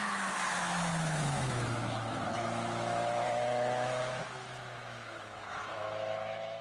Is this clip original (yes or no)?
no